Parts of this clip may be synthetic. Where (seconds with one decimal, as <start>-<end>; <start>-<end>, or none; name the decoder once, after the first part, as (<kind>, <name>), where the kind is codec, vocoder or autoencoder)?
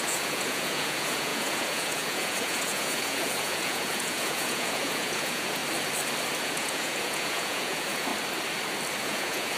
0.0-5.6 (vocoder, Vocos); 6.4-8.1; 9.0-9.6